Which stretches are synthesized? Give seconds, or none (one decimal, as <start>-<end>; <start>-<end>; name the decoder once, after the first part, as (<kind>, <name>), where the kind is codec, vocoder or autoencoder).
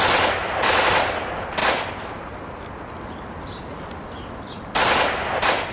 none